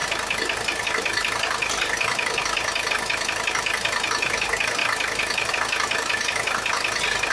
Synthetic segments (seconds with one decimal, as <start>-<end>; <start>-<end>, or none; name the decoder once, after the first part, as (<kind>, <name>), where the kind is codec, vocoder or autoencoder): none